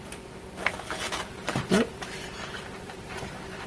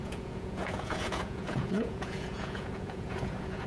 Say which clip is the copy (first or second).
second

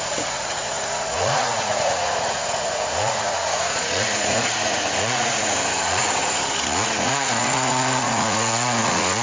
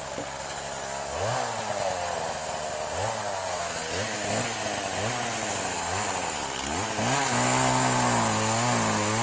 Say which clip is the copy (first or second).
first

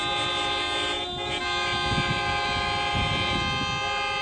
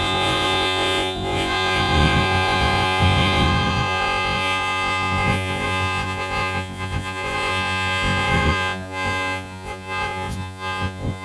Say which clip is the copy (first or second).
second